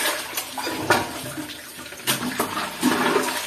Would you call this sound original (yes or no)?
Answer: no